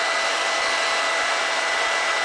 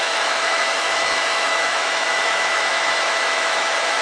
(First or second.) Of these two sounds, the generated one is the second